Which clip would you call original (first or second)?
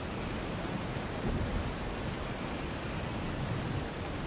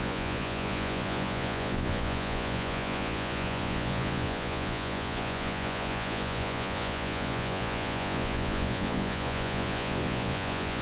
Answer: first